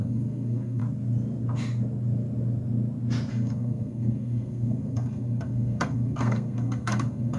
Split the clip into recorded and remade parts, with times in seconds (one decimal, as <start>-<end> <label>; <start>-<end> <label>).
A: 0.0-0.8 remade; 0.8-3.3 recorded; 3.3-7.4 remade

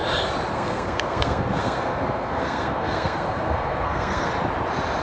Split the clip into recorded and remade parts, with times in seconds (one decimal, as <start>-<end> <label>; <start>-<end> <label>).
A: 0.0-0.5 recorded; 0.5-4.3 remade; 4.3-5.0 recorded

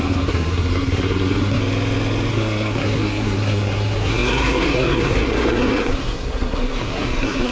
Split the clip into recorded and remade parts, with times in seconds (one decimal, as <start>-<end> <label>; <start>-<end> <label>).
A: 0.0-1.6 remade; 1.6-2.3 recorded; 2.3-7.5 remade

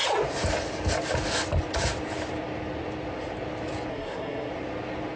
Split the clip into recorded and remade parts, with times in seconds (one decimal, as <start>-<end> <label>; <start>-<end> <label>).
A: 0.0-3.9 recorded; 3.9-4.5 remade; 4.5-5.2 recorded

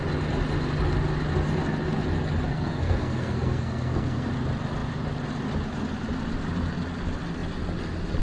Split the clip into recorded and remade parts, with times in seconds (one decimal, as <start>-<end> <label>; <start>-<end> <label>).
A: 0.0-2.5 recorded; 2.5-4.3 remade; 4.3-8.2 recorded

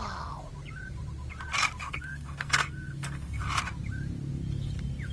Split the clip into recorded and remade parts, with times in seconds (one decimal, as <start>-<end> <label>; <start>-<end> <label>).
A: 0.0-1.8 recorded; 1.8-3.4 remade; 3.4-5.1 recorded

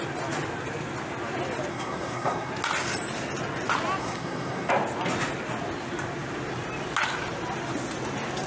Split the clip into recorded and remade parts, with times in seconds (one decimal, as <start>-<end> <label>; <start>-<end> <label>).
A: 0.0-1.7 recorded; 1.7-2.5 remade; 2.5-4.0 recorded; 4.0-4.7 remade; 4.7-8.5 recorded